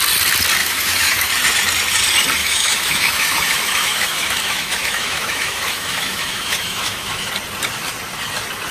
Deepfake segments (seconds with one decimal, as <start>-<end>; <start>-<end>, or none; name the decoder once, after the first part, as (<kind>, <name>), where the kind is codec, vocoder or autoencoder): 0.6-1.3 (autoencoder, DAC-VAE); 2.4-7.3